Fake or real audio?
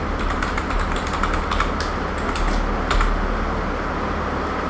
real